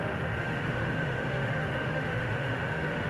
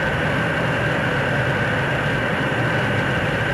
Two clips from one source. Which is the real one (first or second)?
second